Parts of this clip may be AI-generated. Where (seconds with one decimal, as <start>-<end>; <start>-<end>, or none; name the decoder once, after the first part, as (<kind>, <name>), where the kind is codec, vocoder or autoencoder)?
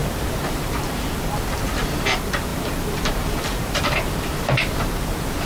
0.0-0.8 (vocoder, BigVGAN v2); 2.5-5.5